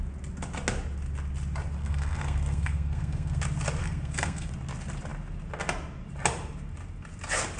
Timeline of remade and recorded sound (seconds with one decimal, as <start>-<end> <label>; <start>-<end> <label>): 0.0-1.8 recorded; 1.8-3.4 remade; 3.4-3.8 recorded; 3.8-4.5 remade; 4.5-7.6 recorded

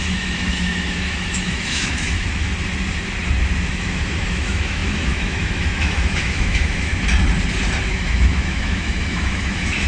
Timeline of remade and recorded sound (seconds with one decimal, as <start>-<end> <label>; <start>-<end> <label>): 0.0-2.5 remade; 2.5-3.7 recorded; 3.7-6.9 remade; 6.9-7.8 recorded; 7.8-9.9 remade

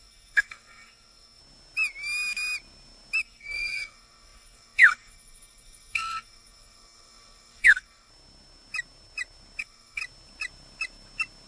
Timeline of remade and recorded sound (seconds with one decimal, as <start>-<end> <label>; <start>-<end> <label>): 0.0-1.4 remade; 1.4-3.2 recorded; 3.2-8.1 remade; 8.1-9.6 recorded; 9.6-10.0 remade; 10.0-11.5 recorded

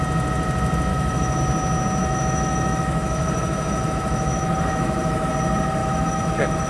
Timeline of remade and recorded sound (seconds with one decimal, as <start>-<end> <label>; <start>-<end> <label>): 0.0-0.9 recorded; 0.9-1.4 remade; 1.4-2.0 recorded; 2.0-5.3 remade; 5.3-5.8 recorded; 5.8-6.7 remade

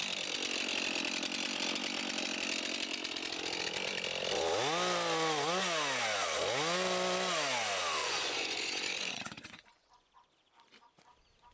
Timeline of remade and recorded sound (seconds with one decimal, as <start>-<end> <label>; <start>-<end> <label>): 0.0-8.0 recorded; 8.0-10.3 remade; 10.3-11.5 recorded

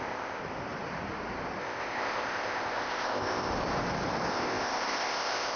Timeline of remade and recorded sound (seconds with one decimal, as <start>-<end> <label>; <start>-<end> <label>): 0.0-0.4 remade; 0.4-1.6 recorded; 1.6-3.5 remade; 3.5-4.3 recorded; 4.3-5.6 remade

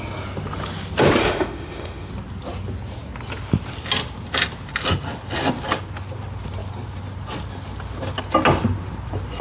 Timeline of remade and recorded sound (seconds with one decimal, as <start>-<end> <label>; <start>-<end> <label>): 0.0-1.2 recorded; 1.2-2.1 remade; 2.1-9.4 recorded

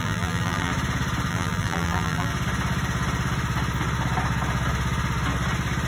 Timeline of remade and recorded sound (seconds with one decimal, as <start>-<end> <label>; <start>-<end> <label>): 0.0-0.7 remade; 0.7-1.3 recorded; 1.3-2.3 remade; 2.3-5.9 recorded